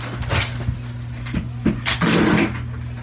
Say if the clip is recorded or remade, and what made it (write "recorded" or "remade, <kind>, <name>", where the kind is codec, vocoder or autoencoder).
recorded